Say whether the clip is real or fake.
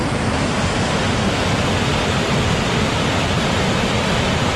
real